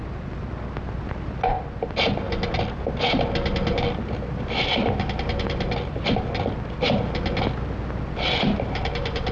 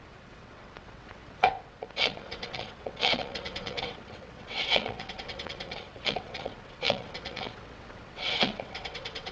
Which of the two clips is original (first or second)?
first